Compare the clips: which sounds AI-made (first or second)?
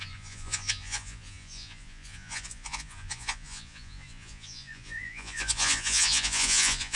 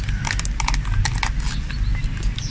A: first